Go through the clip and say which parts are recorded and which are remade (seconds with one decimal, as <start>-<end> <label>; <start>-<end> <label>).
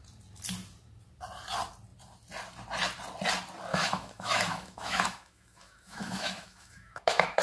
0.0-3.7 recorded; 3.7-7.4 remade